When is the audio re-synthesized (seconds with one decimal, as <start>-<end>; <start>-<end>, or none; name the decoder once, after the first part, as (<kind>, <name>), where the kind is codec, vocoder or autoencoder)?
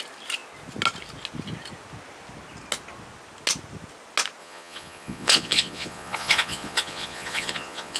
4.4-8.0 (vocoder, Vocos)